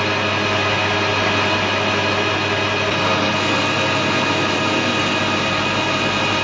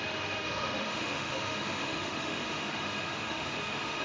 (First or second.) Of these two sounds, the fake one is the second